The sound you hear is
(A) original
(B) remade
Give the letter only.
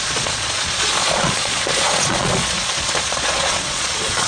B